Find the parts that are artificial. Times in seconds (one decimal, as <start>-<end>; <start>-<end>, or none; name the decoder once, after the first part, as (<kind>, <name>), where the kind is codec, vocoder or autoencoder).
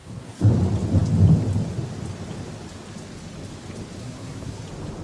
0.0-0.5 (codec, SNAC); 4.0-4.6